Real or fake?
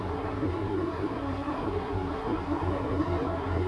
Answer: fake